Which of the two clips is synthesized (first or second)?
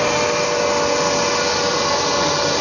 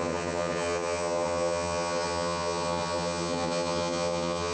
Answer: second